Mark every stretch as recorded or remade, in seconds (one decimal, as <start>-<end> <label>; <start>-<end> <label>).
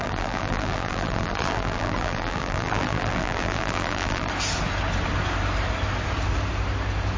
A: 0.0-4.3 remade; 4.3-7.2 recorded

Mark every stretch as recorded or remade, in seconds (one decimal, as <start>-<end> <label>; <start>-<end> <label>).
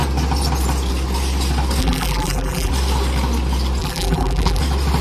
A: 0.0-1.8 recorded; 1.8-2.7 remade; 2.7-3.8 recorded; 3.8-4.6 remade; 4.6-5.0 recorded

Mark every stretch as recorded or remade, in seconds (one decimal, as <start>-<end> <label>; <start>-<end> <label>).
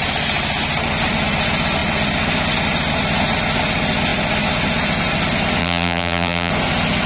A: 0.0-5.6 recorded; 5.6-6.5 remade; 6.5-7.1 recorded